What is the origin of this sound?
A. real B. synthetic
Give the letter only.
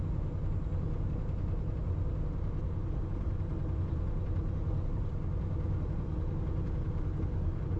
A